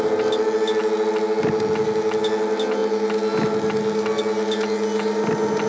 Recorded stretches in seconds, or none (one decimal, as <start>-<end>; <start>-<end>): 0.0-5.7